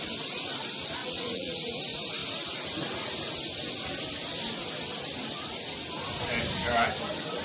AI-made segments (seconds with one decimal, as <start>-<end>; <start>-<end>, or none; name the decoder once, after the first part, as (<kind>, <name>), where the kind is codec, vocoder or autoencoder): 1.0-1.8 (vocoder, Vocos)